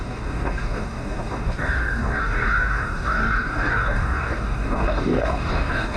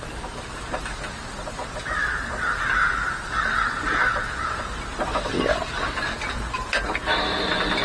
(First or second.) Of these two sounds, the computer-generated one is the first